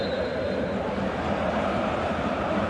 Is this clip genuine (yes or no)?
no